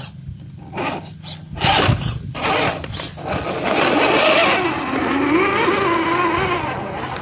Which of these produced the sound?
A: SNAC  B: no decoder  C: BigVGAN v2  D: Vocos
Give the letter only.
B